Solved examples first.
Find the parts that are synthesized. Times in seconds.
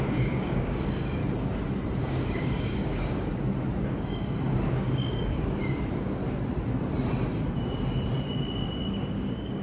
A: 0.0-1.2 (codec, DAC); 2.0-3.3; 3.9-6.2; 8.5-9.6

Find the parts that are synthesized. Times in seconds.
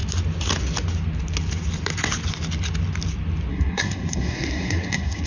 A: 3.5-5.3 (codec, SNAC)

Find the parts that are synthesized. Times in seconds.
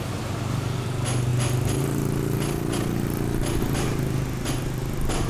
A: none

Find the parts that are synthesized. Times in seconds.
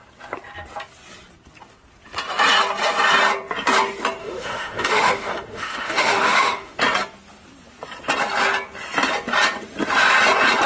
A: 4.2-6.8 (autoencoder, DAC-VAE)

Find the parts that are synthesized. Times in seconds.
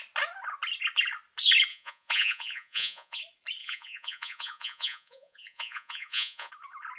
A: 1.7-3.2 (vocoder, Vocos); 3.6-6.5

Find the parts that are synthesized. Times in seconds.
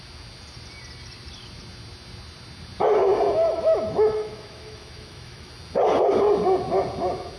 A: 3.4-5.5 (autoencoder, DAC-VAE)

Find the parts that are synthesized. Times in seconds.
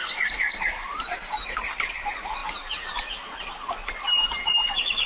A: 0.0-1.9 (vocoder, BigVGAN v2); 2.4-3.0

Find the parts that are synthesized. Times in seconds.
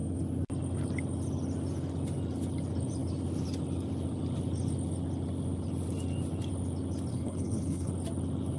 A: 7.1-7.9 (codec, HILCodec)